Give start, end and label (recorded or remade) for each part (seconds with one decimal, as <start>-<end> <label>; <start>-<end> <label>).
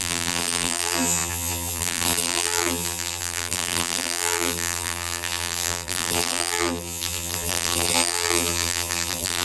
0.0-9.4 remade